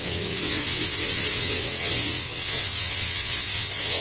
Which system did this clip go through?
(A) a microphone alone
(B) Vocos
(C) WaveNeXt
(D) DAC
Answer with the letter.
C